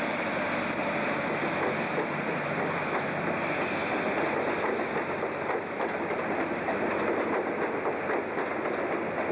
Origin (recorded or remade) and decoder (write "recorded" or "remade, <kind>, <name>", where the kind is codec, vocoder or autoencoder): recorded